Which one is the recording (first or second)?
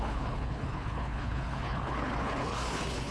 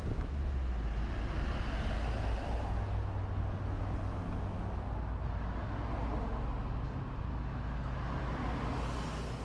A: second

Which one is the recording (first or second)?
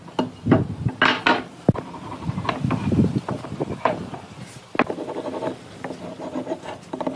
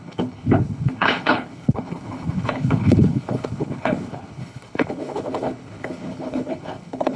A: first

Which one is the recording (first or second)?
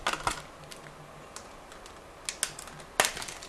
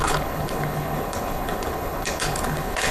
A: first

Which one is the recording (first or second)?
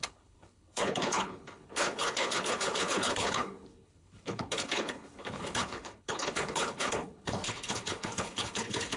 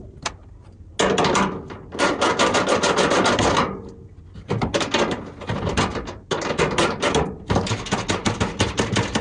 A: second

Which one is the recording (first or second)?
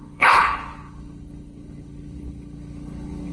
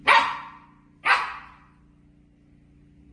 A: second